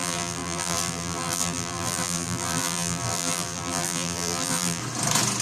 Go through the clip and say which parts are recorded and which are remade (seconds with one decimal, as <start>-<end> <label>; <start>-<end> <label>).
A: 0.0-4.8 remade; 4.8-5.4 recorded